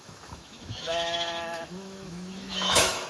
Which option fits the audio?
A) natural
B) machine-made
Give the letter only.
B